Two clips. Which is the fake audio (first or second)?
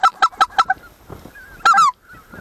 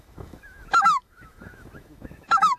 second